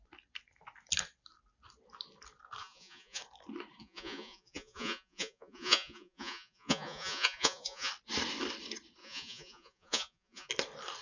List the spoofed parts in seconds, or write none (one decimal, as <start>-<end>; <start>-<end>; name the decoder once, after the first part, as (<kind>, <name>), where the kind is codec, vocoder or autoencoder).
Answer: 2.6-3.2 (vocoder, Vocos); 3.8-7.9; 9.0-10.5